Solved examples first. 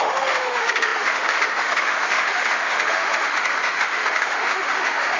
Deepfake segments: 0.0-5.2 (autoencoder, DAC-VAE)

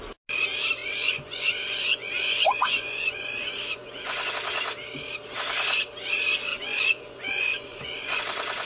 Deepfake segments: 0.8-4.3 (vocoder, Vocos); 6.5-8.2

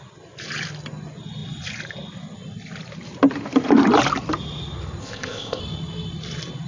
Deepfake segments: 5.0-5.6 (codec, ZipCodec)

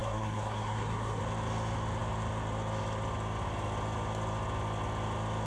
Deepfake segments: 0.0-1.2 (codec, SNAC)

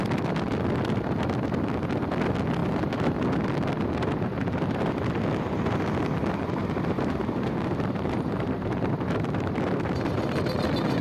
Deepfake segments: 6.6-10.1 (vocoder, BigVGAN v2)